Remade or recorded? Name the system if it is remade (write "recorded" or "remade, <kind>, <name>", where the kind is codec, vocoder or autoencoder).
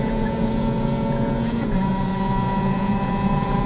remade, vocoder, Vocos